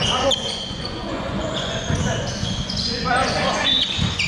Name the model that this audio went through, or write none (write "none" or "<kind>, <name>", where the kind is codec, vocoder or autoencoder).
vocoder, Vocos